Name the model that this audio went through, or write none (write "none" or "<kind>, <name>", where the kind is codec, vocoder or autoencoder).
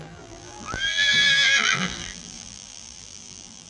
vocoder, BigVGAN v2